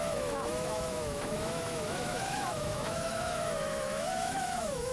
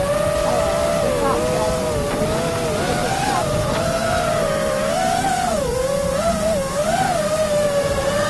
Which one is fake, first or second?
first